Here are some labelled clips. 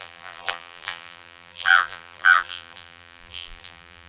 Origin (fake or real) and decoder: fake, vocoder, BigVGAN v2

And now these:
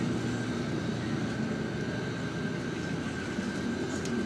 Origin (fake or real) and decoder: real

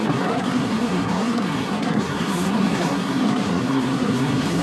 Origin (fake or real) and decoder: fake, codec, SNAC